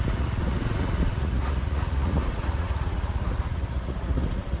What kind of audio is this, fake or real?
fake